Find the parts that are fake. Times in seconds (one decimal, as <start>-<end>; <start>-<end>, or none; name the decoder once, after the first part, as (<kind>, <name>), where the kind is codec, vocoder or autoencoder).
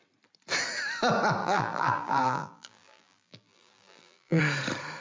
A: 1.4-4.4 (vocoder, BigVGAN v2)